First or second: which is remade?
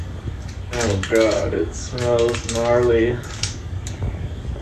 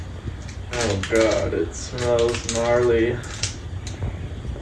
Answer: first